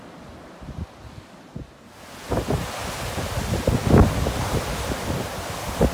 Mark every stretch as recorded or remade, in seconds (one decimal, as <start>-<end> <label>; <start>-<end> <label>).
0.0-5.9 recorded